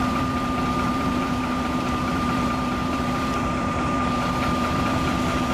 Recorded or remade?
remade